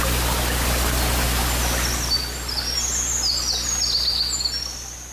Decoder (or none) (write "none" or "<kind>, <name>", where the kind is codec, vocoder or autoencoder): none